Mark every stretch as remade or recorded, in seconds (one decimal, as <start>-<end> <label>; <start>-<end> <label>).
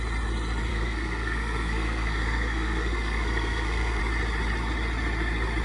0.0-0.7 recorded; 0.7-4.0 remade; 4.0-5.6 recorded